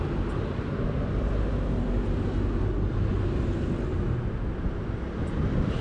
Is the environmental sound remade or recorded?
recorded